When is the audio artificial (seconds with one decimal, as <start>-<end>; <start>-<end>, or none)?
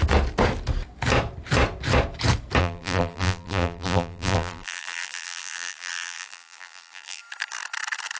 2.6-7.2